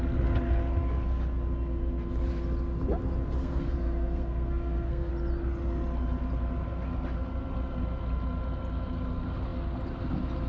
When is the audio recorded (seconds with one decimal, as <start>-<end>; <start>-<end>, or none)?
0.0-3.4; 5.1-10.5